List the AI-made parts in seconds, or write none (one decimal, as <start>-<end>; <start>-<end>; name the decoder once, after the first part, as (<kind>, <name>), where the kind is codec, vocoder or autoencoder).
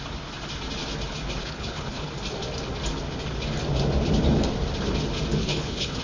1.4-2.1 (codec, HILCodec); 5.4-6.0